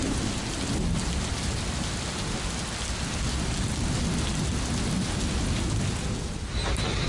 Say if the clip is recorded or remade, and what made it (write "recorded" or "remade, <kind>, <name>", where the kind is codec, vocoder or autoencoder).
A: recorded